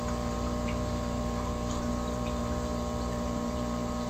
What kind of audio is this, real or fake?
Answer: fake